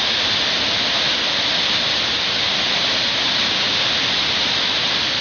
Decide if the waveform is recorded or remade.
recorded